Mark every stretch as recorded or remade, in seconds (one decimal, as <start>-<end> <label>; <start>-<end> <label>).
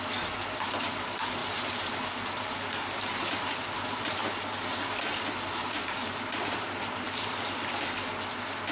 0.0-1.4 recorded; 1.4-4.3 remade; 4.3-5.6 recorded; 5.6-7.3 remade; 7.3-8.7 recorded